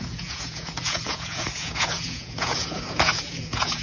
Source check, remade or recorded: remade